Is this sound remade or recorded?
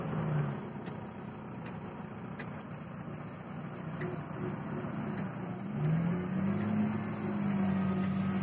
recorded